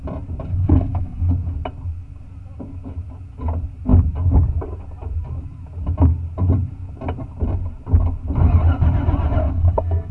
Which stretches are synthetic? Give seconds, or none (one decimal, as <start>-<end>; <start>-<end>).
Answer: 0.5-1.3; 9.4-10.1